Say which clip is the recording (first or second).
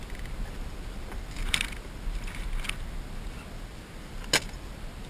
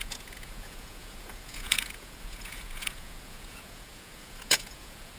first